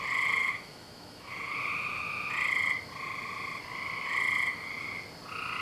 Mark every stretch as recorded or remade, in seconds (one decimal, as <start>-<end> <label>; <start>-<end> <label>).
0.0-0.4 recorded; 0.4-1.3 remade; 1.3-5.6 recorded